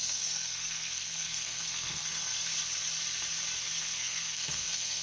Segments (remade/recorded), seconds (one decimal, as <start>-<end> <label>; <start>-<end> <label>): 0.0-2.5 remade; 2.5-3.8 recorded; 3.8-5.0 remade